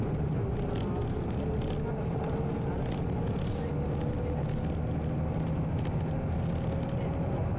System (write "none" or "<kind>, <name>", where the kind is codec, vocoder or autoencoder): none